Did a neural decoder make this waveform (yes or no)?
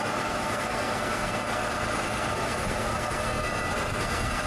yes